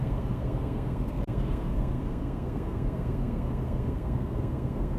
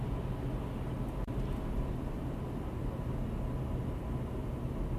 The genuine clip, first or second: second